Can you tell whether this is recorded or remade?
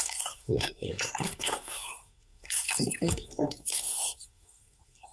remade